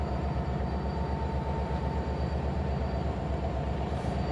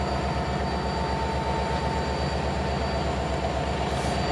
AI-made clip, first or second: first